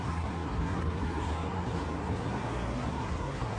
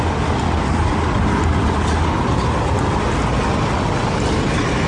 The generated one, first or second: first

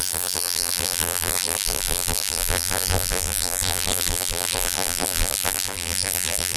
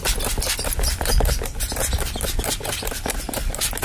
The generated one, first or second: first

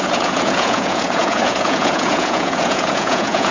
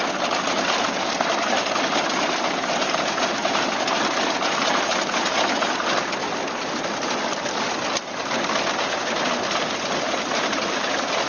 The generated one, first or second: first